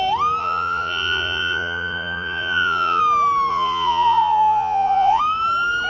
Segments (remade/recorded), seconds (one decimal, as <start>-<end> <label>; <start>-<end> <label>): 0.0-0.4 recorded; 0.4-3.0 remade; 3.0-3.5 recorded; 3.5-5.2 remade; 5.2-5.9 recorded